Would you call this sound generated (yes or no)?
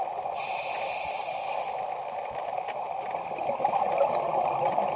no